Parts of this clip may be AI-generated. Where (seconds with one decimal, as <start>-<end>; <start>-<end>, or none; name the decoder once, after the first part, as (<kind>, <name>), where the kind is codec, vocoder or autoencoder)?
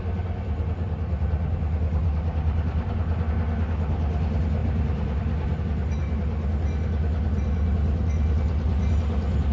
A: 2.0-3.3 (vocoder, BigVGAN v2); 4.6-5.6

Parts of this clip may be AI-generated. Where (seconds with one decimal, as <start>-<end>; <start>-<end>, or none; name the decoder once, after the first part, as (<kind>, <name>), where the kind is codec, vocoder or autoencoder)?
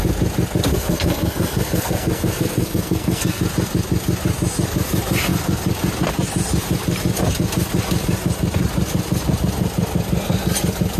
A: 0.7-3.4 (codec, SNAC)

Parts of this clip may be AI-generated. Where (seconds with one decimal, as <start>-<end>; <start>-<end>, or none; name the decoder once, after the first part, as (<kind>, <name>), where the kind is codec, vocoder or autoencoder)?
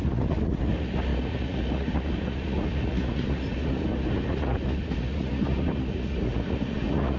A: 0.0-7.2 (vocoder, Vocos)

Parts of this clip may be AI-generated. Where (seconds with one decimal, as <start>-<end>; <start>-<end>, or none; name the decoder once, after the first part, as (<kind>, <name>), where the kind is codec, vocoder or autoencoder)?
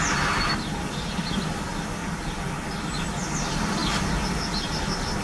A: none